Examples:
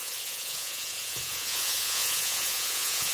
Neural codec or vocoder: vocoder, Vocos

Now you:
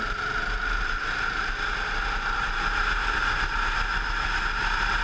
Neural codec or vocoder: none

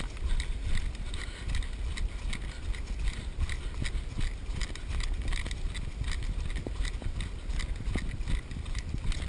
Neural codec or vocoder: none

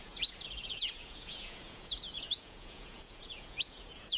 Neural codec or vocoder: vocoder, Vocos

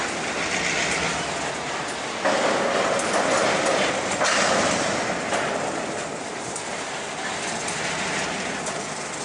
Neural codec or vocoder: none